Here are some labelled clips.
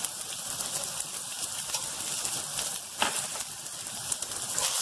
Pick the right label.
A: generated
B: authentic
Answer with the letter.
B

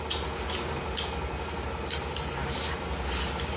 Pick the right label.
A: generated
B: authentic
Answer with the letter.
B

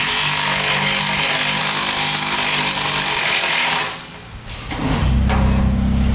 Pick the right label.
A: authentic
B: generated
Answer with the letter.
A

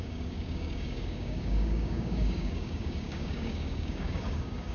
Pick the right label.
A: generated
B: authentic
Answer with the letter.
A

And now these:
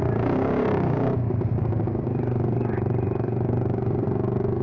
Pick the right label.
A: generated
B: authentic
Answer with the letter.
A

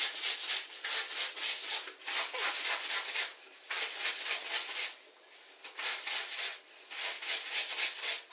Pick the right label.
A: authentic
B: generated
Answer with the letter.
A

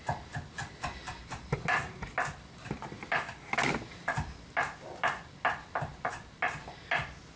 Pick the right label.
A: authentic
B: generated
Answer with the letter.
A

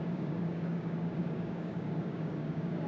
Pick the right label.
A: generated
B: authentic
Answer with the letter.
A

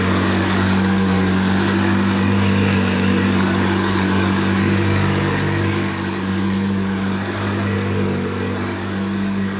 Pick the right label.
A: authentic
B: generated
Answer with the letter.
B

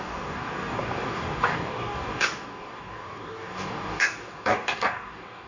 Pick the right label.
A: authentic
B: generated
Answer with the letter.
B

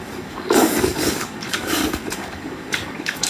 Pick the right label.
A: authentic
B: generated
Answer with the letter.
B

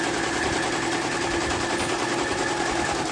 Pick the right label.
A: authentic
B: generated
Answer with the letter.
A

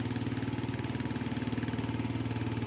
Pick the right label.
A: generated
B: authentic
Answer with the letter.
B